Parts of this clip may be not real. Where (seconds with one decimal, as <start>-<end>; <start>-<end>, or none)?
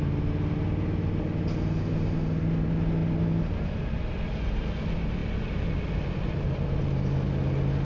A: none